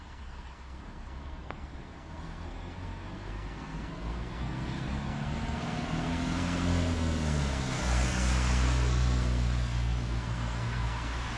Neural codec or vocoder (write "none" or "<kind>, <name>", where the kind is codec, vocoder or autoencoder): codec, SNAC